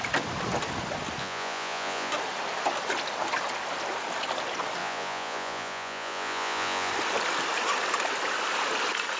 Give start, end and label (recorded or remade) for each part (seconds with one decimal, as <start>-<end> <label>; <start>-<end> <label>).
0.0-1.2 recorded; 1.2-2.1 remade; 2.1-4.8 recorded; 4.8-6.9 remade; 6.9-9.2 recorded